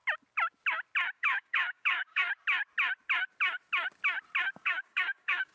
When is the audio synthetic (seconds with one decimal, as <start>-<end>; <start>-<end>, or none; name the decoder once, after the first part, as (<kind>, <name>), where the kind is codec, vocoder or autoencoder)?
1.1-2.2 (codec, DAC); 4.6-5.5